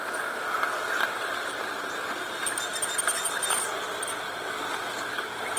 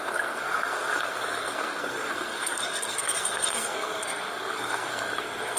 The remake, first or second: second